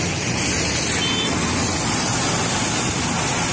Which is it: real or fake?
real